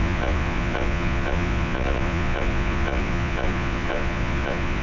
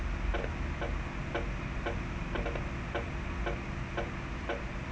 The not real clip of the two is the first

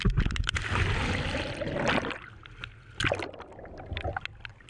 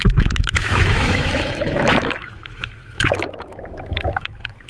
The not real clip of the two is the second